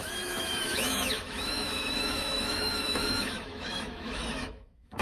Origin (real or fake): fake